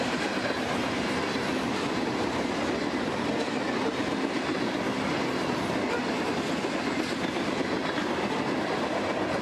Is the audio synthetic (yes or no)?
no